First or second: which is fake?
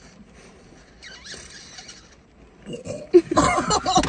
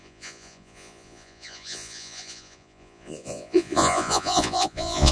second